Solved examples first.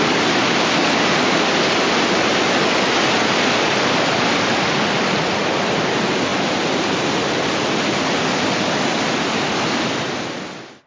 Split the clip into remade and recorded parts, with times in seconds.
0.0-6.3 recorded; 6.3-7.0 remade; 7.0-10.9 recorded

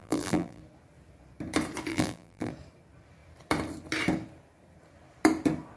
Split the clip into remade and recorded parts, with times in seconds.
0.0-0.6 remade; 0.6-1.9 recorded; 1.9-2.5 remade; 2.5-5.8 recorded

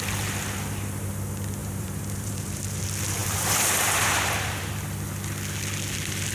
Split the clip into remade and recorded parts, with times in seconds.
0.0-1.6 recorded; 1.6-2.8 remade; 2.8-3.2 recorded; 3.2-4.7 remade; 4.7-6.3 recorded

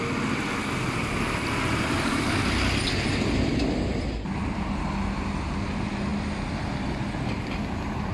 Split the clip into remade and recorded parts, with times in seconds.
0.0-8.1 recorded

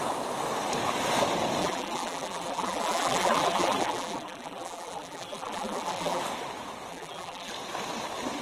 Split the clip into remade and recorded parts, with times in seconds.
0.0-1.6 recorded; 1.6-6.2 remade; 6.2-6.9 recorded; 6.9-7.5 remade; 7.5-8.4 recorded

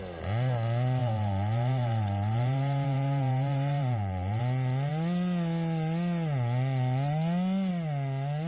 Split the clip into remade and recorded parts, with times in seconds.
0.0-1.0 recorded; 1.0-4.4 remade; 4.4-8.5 recorded

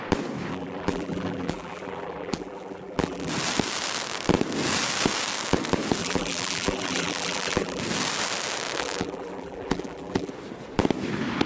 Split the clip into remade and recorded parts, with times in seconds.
0.0-0.5 recorded; 0.5-3.3 remade; 3.3-6.0 recorded; 6.0-7.8 remade; 7.8-8.8 recorded; 8.8-10.3 remade; 10.3-11.5 recorded

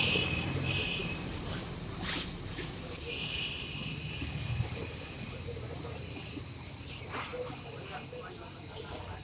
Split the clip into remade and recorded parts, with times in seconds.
0.0-7.3 remade; 7.3-8.3 recorded; 8.3-9.2 remade